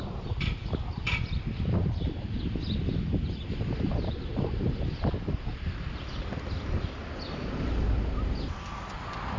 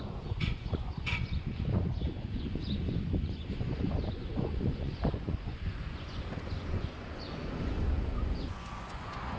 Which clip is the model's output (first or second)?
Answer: second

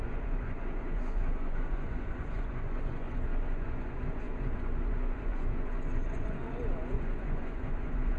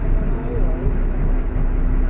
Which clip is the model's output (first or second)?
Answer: first